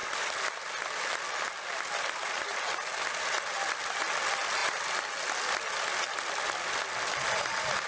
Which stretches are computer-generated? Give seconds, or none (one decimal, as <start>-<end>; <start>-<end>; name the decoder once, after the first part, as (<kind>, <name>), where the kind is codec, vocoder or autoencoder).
none